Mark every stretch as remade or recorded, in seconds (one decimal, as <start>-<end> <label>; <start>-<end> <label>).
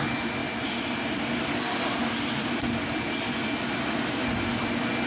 0.0-0.4 recorded; 0.4-3.5 remade; 3.5-5.1 recorded